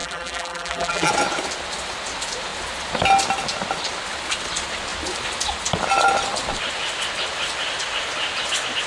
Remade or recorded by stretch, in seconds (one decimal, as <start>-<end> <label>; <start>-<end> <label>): 0.0-1.1 remade; 1.1-8.9 recorded